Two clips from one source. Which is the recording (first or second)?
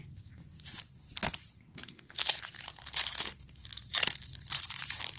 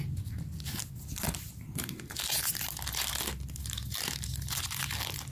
second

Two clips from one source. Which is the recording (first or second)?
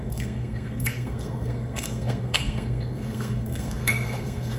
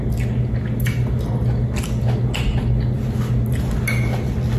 second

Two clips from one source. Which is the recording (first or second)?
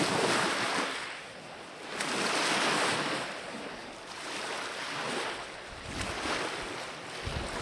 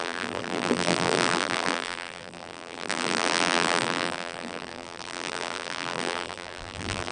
first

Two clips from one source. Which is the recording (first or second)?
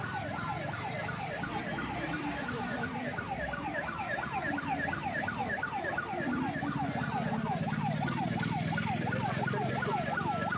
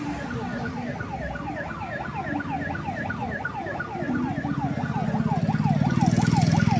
second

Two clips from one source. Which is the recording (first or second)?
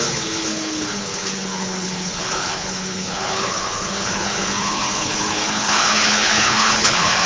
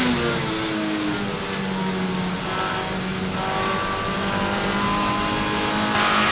second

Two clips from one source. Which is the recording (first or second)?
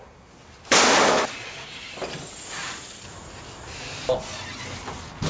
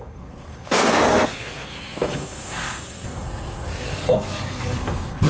first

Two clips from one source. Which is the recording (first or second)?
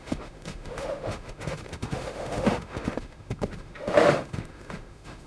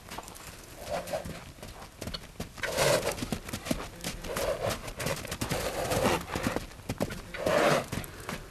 second